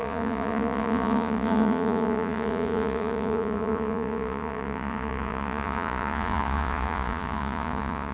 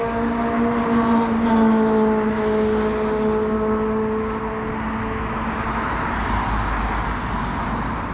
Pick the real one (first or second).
second